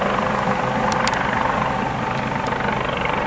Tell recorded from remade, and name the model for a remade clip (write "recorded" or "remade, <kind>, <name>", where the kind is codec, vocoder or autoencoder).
recorded